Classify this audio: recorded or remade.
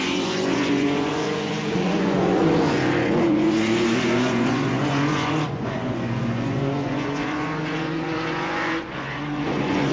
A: remade